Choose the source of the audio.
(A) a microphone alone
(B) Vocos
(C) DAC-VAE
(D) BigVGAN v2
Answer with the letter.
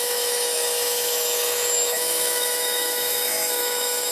C